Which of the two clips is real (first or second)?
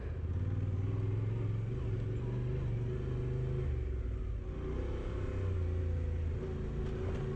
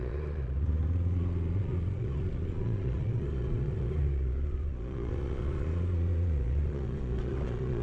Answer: first